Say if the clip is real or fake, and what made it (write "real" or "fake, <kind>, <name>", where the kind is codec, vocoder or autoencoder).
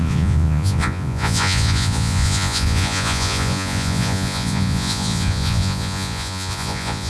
fake, vocoder, Vocos